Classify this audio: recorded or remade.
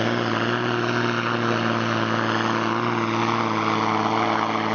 recorded